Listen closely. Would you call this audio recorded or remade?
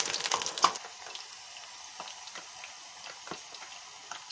recorded